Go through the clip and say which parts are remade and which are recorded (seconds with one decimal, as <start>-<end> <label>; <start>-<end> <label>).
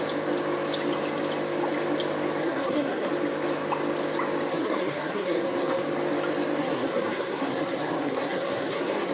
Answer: 0.0-2.4 recorded; 2.4-3.1 remade; 3.1-4.5 recorded; 4.5-5.8 remade; 5.8-6.6 recorded; 6.6-9.1 remade